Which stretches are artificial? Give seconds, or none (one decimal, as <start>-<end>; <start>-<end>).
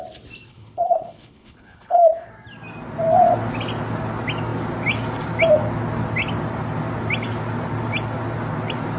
0.5-2.3